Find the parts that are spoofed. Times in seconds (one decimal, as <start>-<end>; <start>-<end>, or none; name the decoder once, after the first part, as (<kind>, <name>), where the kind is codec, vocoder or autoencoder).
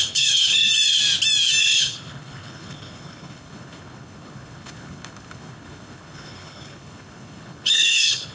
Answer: 0.0-0.7 (codec, HILCodec); 1.6-8.3